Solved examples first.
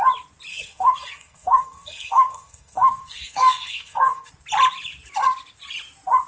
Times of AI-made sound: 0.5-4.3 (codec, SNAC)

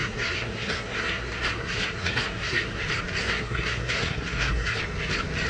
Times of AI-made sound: 0.0-2.8 (codec, SNAC); 3.2-4.8

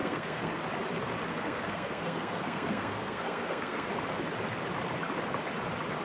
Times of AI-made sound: 0.0-0.6 (codec, SNAC); 1.3-3.9

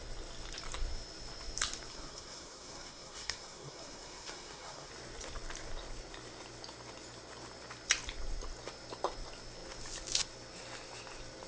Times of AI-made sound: 1.9-4.9 (codec, SNAC)

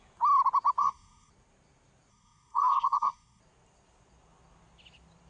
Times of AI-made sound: 0.8-1.3 (codec, SNAC); 2.1-3.4

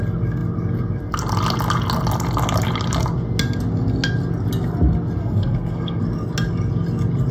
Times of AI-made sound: 5.2-6.0 (codec, SNAC)